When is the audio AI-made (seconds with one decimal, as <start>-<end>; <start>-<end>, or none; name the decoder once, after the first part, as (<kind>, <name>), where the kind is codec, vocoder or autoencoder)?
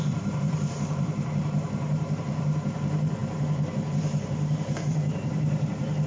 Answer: 0.0-6.1 (vocoder, BigVGAN v2)